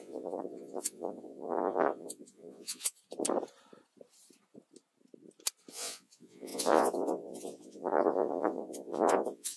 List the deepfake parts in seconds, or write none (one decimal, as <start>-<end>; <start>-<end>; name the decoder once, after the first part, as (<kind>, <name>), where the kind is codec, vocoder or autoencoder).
0.0-3.0 (vocoder, Vocos); 5.7-9.6